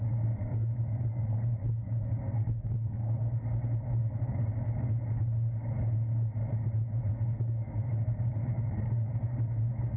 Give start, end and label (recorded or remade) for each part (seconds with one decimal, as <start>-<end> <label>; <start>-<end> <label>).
0.0-3.3 remade; 3.3-4.0 recorded; 4.0-4.4 remade; 4.4-7.1 recorded; 7.1-10.0 remade